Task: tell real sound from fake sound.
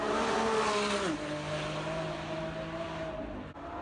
real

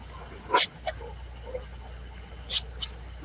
real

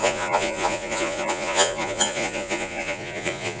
fake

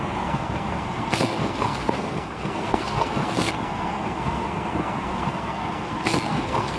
fake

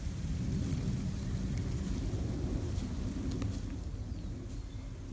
real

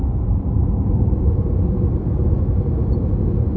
real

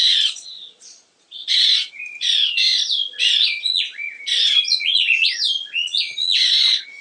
fake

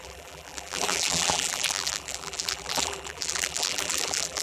fake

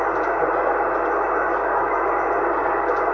real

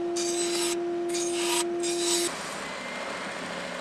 real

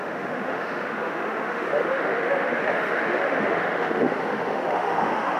fake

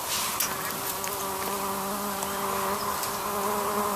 real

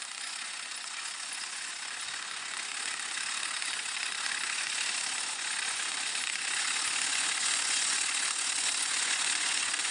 fake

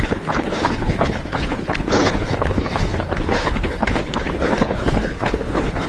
fake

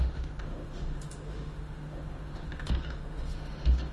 fake